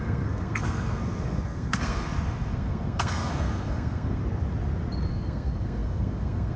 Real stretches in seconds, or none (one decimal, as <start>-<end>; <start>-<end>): 4.2-5.1